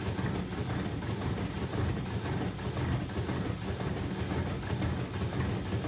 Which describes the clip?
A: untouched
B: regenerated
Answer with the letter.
A